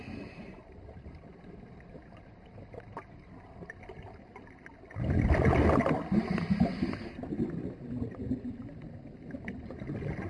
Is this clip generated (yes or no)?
no